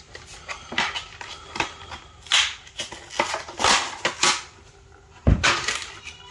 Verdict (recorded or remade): recorded